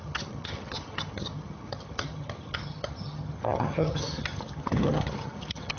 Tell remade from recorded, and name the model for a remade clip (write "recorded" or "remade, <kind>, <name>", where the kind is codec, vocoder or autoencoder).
remade, vocoder, HiFi-GAN